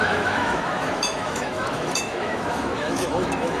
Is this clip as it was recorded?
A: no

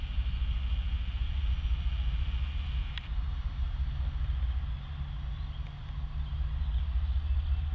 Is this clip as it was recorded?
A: yes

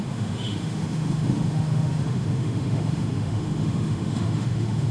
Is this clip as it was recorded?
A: no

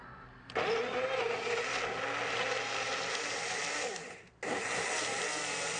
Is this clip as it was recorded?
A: yes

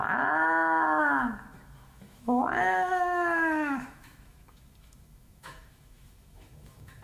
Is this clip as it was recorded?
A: no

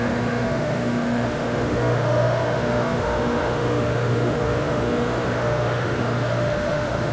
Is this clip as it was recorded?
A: no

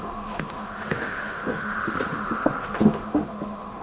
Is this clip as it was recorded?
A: no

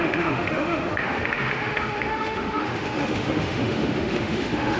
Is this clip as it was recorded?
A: no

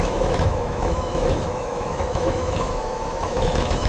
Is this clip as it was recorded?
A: no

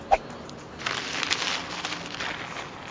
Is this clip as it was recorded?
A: yes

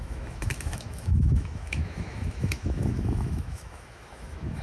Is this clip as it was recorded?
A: no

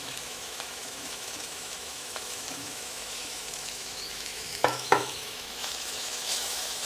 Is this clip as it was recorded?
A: no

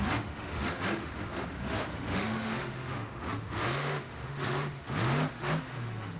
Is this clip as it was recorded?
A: no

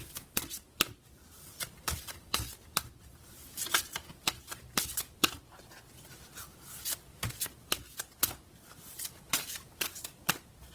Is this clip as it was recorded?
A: yes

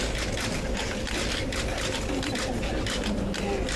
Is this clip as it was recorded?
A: yes